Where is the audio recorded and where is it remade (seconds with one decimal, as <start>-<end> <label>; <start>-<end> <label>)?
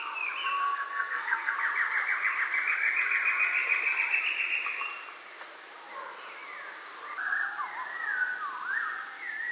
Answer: 0.0-0.6 recorded; 0.6-1.5 remade; 1.5-9.5 recorded